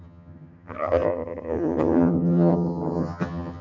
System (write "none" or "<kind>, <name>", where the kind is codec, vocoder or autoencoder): vocoder, HiFi-GAN